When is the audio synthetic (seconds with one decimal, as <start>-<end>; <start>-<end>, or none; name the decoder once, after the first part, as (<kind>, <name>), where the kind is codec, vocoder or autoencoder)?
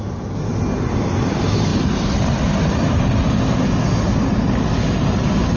none